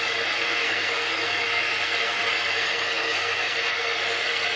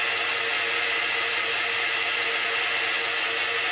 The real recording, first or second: second